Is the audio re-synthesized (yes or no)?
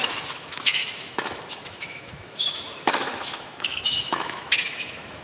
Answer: yes